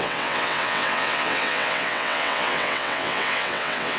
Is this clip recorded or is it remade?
remade